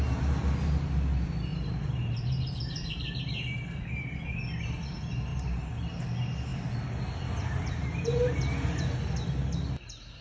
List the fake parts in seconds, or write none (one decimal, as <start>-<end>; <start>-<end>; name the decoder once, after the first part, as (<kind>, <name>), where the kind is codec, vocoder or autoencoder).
1.5-3.2 (vocoder, BigVGAN v2); 5.3-5.9; 7.4-8.4